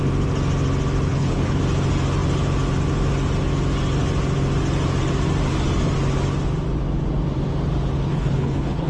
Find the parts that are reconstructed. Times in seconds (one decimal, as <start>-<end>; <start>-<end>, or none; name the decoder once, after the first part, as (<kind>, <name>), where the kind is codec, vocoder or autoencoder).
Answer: 1.1-1.6 (codec, HILCodec); 8.1-8.9